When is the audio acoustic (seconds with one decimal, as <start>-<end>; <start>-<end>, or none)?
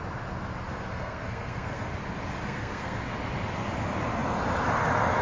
0.0-0.7; 1.9-2.4; 3.0-5.2